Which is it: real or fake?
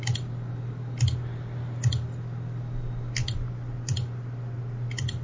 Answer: real